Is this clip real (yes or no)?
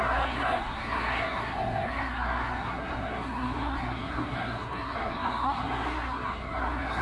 no